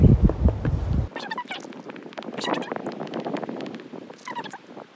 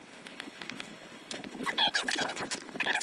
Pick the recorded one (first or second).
first